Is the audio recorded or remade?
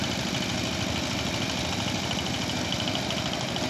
recorded